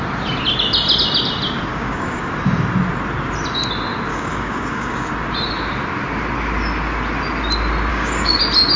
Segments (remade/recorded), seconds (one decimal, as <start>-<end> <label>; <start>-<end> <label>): 0.0-1.7 recorded; 1.7-2.3 remade; 2.3-4.1 recorded; 4.1-5.1 remade; 5.1-7.9 recorded; 7.9-8.4 remade; 8.4-8.8 recorded